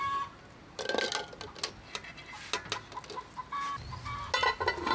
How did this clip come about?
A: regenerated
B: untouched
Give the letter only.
B